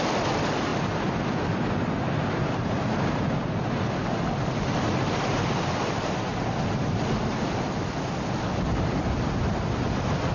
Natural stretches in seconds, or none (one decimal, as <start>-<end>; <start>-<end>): 0.0-10.3